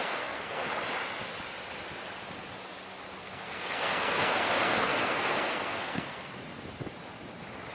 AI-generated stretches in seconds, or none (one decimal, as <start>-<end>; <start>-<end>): 0.0-0.7; 3.2-6.3